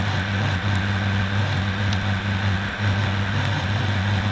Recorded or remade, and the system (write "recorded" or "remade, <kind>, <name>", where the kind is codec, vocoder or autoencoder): recorded